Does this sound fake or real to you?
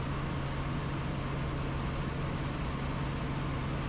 real